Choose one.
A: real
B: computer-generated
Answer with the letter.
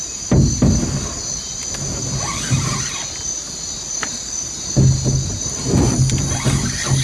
A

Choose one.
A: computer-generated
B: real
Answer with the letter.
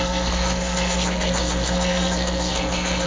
A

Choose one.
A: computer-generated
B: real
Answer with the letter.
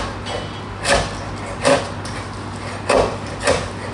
B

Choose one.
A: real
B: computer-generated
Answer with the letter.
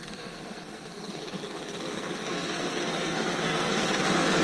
B